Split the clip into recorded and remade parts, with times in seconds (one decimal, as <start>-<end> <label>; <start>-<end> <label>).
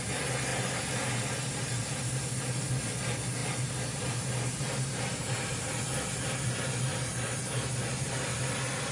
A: 0.0-0.5 recorded; 0.5-2.2 remade; 2.2-3.4 recorded; 3.4-5.7 remade; 5.7-8.9 recorded